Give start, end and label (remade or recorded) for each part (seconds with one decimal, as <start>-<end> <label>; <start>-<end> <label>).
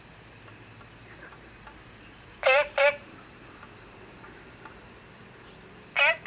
0.0-1.0 recorded; 1.0-4.8 remade; 4.8-6.3 recorded